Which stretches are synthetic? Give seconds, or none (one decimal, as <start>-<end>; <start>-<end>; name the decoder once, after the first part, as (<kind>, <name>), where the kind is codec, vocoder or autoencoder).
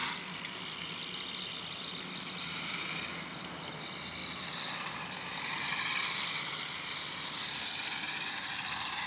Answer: 4.2-6.4 (vocoder, BigVGAN v2)